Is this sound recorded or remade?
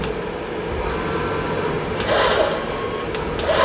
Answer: recorded